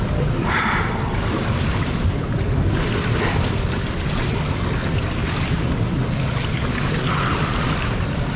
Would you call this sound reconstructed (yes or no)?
no